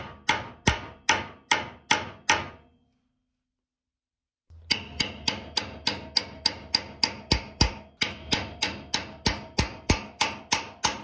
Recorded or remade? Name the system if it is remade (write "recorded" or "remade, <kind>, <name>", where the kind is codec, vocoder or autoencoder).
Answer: recorded